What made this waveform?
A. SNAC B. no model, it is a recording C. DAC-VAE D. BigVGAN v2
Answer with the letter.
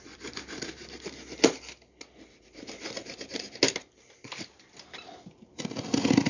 B